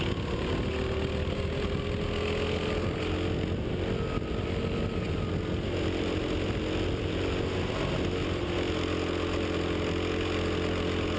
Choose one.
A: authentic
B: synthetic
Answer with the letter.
A